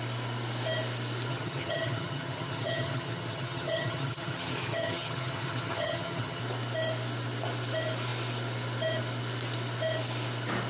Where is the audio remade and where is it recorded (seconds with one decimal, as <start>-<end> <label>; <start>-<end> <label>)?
0.0-1.3 recorded; 1.3-6.4 remade; 6.4-10.7 recorded